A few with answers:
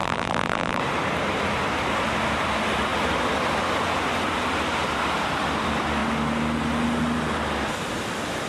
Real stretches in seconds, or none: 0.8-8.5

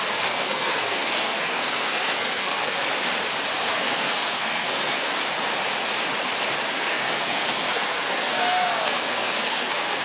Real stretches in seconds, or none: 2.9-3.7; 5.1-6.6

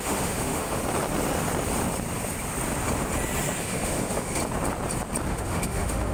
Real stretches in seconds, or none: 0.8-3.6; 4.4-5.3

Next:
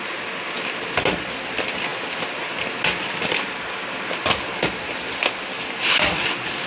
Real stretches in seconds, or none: 0.0-6.7